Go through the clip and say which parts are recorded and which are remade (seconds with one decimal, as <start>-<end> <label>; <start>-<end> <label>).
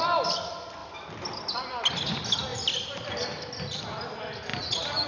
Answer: 0.0-5.1 recorded